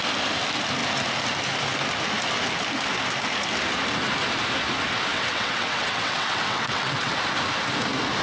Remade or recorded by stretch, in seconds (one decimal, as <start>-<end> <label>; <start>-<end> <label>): 0.0-5.1 recorded; 5.1-7.1 remade; 7.1-8.2 recorded